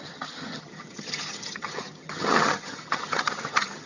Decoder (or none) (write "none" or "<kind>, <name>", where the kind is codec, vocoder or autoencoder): vocoder, HiFi-GAN